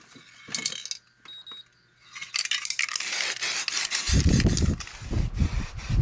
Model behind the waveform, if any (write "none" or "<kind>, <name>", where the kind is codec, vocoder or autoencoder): none